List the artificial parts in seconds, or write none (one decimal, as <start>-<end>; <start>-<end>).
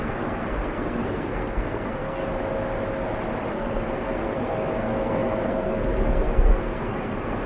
0.0-2.2; 3.5-7.5